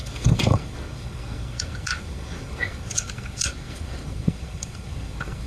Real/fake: fake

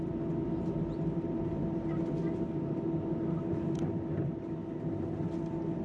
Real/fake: real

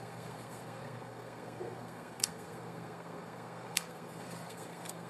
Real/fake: fake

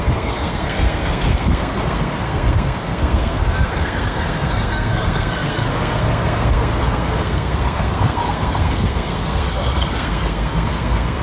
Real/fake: fake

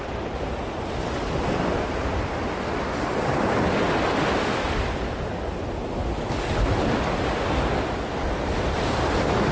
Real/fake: real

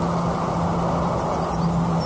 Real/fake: real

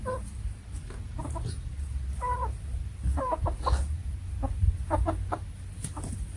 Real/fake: real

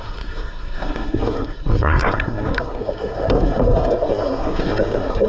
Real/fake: fake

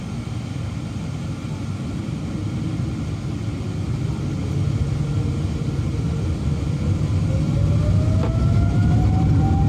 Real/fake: real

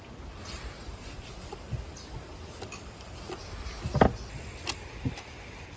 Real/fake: real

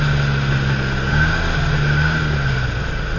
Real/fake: real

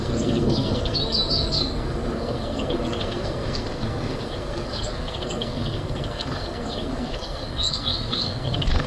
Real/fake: fake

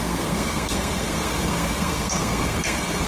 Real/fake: fake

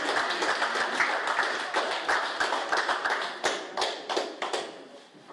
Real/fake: real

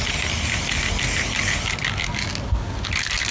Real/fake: real